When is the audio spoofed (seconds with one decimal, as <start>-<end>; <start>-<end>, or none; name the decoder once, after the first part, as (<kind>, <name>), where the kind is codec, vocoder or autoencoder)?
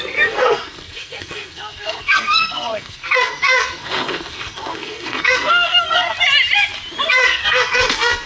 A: 0.0-6.1 (codec, SNAC); 7.1-8.3